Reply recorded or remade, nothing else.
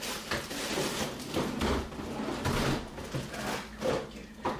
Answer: recorded